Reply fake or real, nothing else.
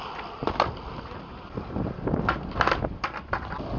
real